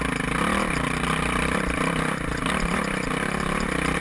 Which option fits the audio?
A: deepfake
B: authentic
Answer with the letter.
B